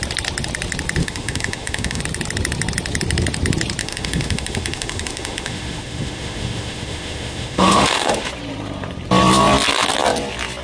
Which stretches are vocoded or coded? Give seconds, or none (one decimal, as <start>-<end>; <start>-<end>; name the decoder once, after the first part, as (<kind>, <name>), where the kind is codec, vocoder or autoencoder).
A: 1.0-2.0 (autoencoder, DAC-VAE); 3.8-8.3